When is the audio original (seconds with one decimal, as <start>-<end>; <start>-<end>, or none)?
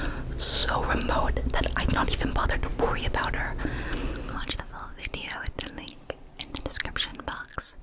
0.0-7.8